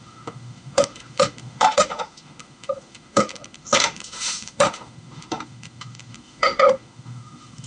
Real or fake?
fake